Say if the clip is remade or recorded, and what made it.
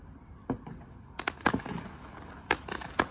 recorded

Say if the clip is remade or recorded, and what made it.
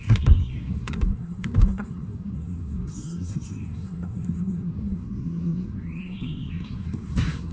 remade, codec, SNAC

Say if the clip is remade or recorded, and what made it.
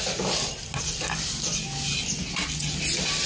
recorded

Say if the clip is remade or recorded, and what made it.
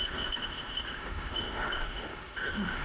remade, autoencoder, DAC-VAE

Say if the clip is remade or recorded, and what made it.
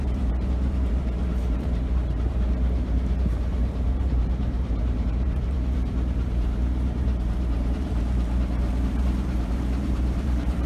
remade, vocoder, BigVGAN v2